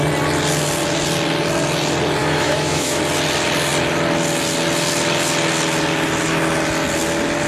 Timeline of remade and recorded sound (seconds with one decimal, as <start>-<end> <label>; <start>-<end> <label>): 0.0-2.2 recorded; 2.2-3.0 remade; 3.0-7.5 recorded